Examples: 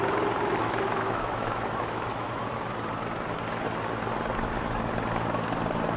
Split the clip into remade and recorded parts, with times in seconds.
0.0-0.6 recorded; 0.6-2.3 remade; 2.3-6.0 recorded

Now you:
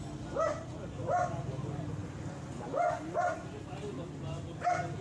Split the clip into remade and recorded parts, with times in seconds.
0.0-5.0 recorded

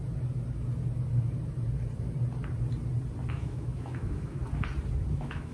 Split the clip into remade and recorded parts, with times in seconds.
0.0-3.3 recorded; 3.3-4.4 remade; 4.4-5.1 recorded; 5.1-5.5 remade

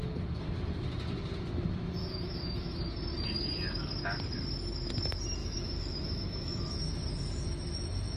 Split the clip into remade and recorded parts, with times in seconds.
0.0-2.0 recorded; 2.0-2.8 remade; 2.8-5.4 recorded; 5.4-8.2 remade

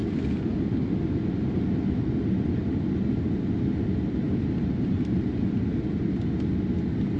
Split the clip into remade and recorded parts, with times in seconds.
0.0-7.2 recorded

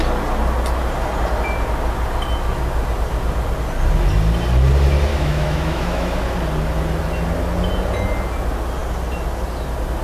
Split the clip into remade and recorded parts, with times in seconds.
0.0-5.1 recorded; 5.1-6.2 remade; 6.2-10.0 recorded

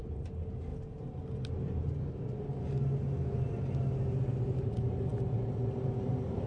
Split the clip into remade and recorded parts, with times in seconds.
0.0-6.5 recorded

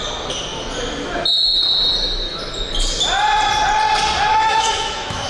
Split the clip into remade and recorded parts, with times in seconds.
0.0-4.3 recorded; 4.3-5.3 remade